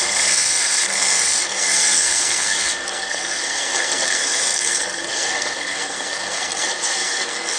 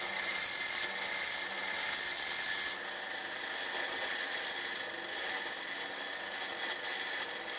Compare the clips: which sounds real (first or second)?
second